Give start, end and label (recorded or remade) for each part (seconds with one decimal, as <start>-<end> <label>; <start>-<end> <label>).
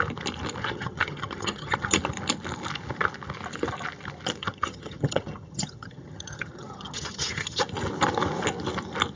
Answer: 0.0-0.6 recorded; 0.6-2.0 remade; 2.0-4.4 recorded; 4.4-7.6 remade; 7.6-9.2 recorded